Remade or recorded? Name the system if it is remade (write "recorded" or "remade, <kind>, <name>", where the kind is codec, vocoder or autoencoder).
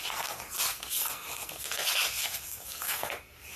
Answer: remade, codec, SNAC